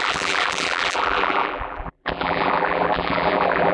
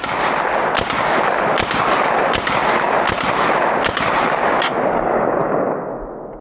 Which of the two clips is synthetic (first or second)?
first